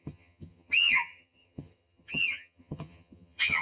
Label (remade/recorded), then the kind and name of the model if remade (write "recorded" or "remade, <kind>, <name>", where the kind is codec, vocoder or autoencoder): remade, vocoder, HiFi-GAN